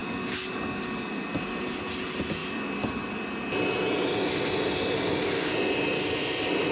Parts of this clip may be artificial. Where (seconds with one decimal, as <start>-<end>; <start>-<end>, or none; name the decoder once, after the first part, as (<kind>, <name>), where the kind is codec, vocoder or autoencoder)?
none